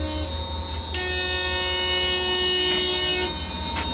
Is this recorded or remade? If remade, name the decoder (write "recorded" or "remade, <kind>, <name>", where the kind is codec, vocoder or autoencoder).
recorded